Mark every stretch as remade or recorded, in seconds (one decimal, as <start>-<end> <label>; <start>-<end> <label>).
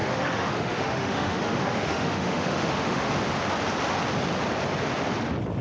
0.0-3.1 remade; 3.1-5.6 recorded